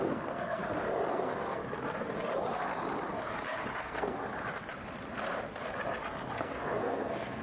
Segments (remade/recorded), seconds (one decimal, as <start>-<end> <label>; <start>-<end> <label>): 0.0-0.6 remade; 0.6-1.1 recorded; 1.1-1.6 remade; 1.6-3.8 recorded; 3.8-4.2 remade; 4.2-6.4 recorded; 6.4-7.4 remade